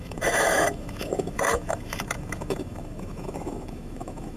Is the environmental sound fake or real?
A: fake